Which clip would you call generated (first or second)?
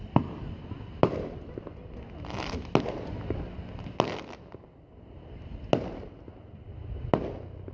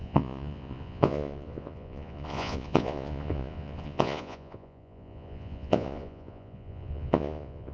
second